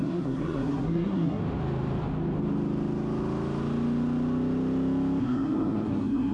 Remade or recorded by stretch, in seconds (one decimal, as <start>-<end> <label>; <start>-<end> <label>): 0.0-1.4 remade; 1.4-5.2 recorded; 5.2-6.3 remade